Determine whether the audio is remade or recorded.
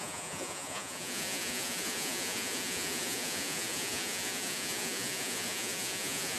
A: remade